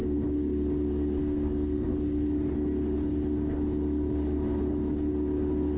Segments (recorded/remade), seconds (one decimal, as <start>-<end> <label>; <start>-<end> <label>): 0.0-1.2 recorded; 1.2-1.9 remade; 1.9-5.8 recorded